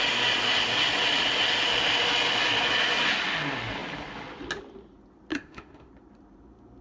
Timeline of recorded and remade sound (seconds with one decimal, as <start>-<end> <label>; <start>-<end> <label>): 0.0-5.3 recorded; 5.3-5.9 remade; 5.9-6.8 recorded